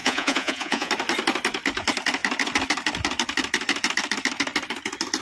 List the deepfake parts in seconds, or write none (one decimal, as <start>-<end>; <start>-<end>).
0.0-0.9